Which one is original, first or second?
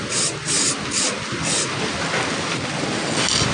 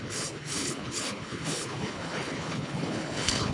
first